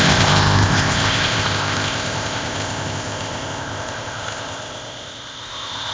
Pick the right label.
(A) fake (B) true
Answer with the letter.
A